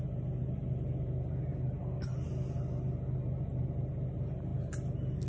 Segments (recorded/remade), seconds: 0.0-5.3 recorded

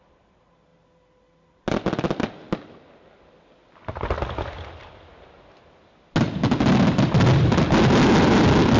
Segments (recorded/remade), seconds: 0.0-8.8 recorded

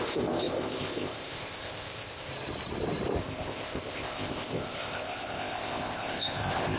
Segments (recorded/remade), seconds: 0.0-2.3 remade; 2.3-3.2 recorded; 3.2-6.8 remade